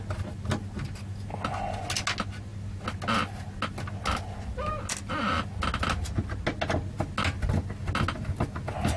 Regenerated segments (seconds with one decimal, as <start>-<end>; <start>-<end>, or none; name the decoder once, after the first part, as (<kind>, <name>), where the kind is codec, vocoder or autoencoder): none